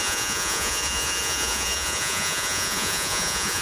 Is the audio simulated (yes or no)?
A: yes